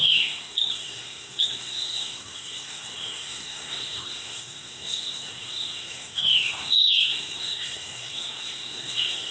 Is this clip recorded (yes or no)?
no